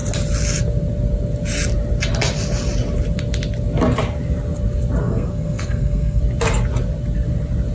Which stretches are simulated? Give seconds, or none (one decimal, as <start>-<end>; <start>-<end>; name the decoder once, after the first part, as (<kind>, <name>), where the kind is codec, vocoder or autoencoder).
5.0-6.2 (codec, SNAC)